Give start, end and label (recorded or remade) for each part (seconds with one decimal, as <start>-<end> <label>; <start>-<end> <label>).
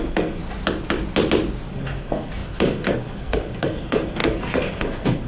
0.0-0.4 remade; 0.4-1.7 recorded; 1.7-5.3 remade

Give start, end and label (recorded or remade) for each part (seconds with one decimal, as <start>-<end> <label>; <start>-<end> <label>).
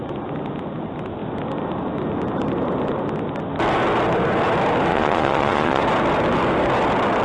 0.0-4.9 recorded; 4.9-5.8 remade; 5.8-7.2 recorded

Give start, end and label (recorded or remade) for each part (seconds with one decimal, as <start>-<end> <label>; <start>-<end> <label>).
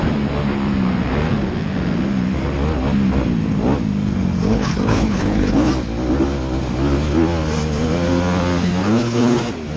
0.0-4.5 recorded; 4.5-5.7 remade; 5.7-8.8 recorded; 8.8-9.4 remade; 9.4-9.8 recorded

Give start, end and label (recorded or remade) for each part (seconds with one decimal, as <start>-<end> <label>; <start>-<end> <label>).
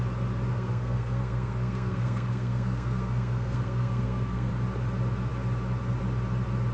0.0-0.5 recorded; 0.5-4.5 remade; 4.5-6.7 recorded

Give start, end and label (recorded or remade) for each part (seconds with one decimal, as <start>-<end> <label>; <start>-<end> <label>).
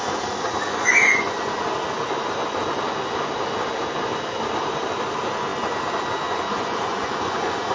0.0-0.7 recorded; 0.7-1.5 remade; 1.5-6.5 recorded; 6.5-7.7 remade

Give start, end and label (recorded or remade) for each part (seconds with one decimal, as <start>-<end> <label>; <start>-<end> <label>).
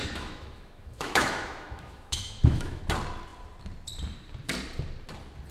0.0-2.8 remade; 2.8-5.5 recorded